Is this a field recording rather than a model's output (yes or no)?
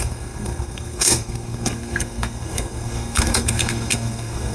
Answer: no